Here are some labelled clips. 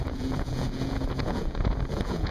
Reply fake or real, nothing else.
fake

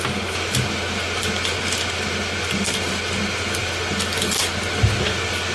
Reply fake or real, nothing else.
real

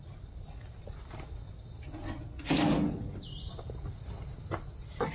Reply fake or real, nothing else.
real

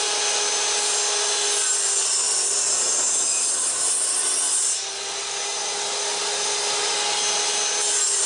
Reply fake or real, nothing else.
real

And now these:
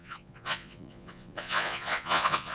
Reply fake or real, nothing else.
fake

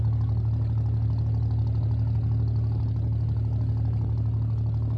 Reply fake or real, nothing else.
real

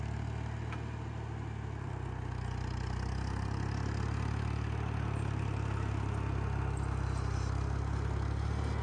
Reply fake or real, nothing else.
real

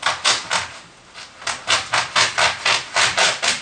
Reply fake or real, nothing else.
real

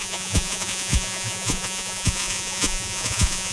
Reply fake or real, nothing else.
fake